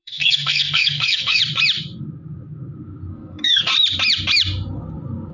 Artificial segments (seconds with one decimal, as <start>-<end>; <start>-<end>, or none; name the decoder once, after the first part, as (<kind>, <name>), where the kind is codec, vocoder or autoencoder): 0.0-1.4 (codec, SNAC); 3.1-3.7